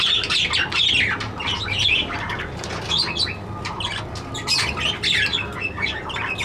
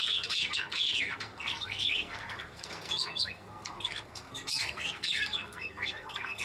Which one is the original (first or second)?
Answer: first